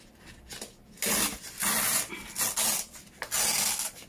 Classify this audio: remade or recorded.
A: recorded